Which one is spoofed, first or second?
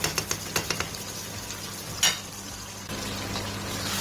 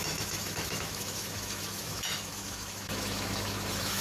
second